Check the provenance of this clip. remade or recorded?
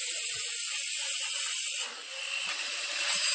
recorded